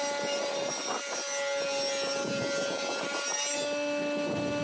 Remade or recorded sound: recorded